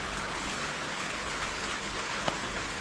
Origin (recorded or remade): remade